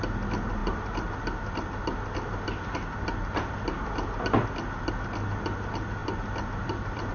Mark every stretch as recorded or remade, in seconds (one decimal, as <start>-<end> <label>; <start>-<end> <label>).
0.0-7.1 recorded